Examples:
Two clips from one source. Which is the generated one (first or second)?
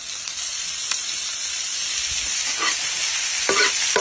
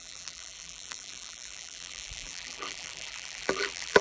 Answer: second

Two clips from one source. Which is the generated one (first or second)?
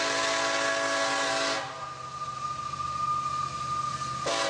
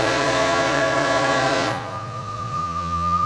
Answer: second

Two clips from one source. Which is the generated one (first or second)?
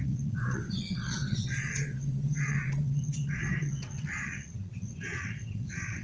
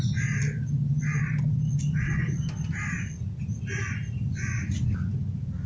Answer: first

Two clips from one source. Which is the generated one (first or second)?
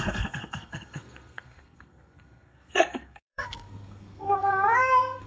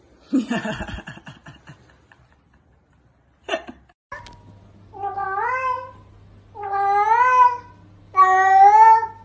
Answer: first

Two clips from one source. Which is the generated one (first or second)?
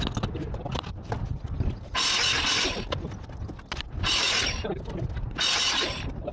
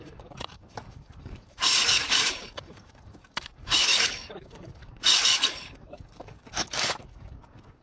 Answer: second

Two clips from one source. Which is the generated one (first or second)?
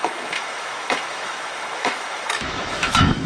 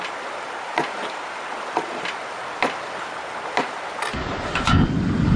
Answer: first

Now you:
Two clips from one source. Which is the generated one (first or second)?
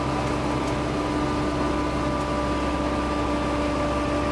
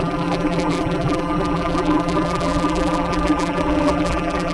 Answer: second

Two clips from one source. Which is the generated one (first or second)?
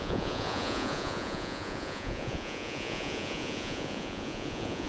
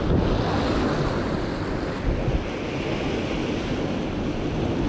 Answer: first